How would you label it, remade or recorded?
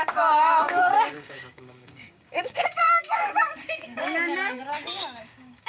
remade